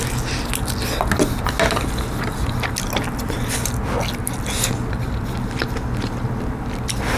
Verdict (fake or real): real